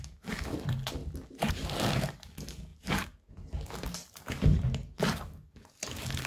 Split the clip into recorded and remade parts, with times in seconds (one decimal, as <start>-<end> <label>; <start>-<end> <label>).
0.0-1.0 remade; 1.0-1.5 recorded; 1.5-6.3 remade